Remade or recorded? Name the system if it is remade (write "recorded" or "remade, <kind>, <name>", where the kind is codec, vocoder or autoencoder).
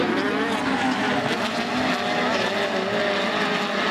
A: recorded